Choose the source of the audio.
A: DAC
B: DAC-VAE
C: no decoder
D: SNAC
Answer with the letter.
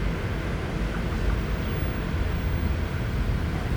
C